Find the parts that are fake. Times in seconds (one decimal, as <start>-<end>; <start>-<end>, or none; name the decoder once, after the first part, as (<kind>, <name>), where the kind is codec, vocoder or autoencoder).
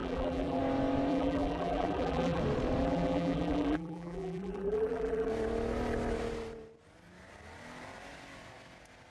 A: 0.0-0.6 (vocoder, BigVGAN v2); 1.1-2.4; 2.8-5.3